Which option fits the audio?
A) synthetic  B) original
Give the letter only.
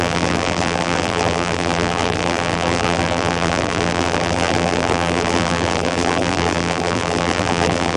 A